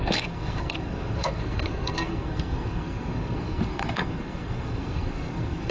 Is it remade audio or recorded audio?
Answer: remade